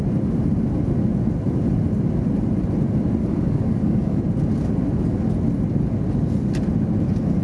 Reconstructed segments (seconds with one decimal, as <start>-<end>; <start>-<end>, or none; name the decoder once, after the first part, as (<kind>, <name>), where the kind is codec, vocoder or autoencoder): 3.2-4.2 (codec, DAC)

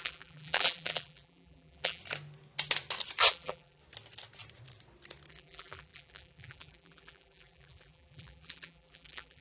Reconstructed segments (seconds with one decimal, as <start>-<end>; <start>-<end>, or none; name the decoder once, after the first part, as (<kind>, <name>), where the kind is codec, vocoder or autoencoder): 0.0-2.0 (vocoder, BigVGAN v2); 3.3-3.8; 5.3-9.4

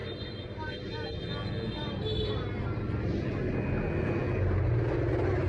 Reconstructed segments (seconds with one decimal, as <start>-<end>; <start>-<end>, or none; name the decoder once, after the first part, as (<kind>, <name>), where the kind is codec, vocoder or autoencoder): none